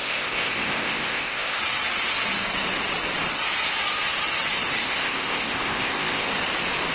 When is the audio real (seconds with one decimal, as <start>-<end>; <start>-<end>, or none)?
1.6-4.8; 6.3-6.9